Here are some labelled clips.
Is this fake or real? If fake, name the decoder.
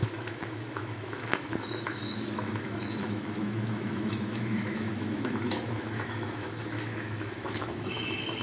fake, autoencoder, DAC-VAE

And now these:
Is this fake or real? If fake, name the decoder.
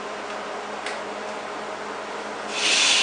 real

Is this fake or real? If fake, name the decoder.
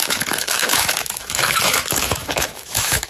fake, autoencoder, DAC-VAE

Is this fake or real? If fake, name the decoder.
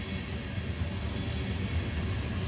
real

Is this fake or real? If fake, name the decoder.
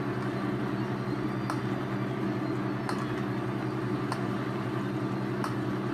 real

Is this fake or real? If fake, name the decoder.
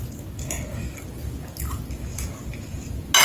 real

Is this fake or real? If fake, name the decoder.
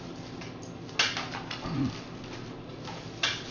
real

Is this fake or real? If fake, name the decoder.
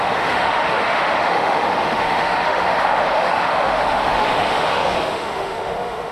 fake, autoencoder, DAC-VAE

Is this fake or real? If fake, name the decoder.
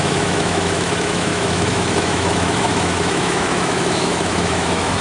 fake, autoencoder, DAC-VAE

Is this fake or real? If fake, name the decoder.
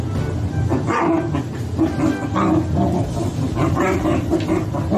real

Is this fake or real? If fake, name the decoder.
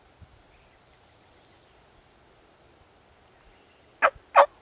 real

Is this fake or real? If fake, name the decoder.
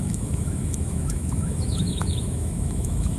fake, autoencoder, DAC-VAE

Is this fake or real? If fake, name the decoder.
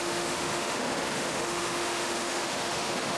fake, autoencoder, DAC-VAE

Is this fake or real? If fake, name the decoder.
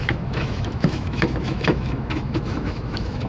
fake, autoencoder, DAC-VAE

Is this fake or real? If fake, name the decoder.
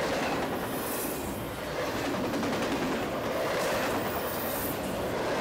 real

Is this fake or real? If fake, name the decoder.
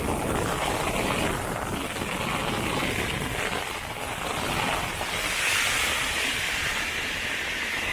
real